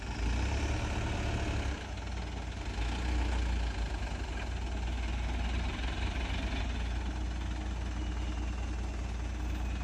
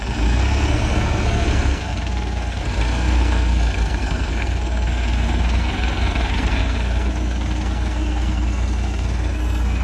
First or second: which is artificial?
second